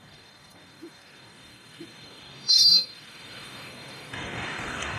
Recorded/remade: remade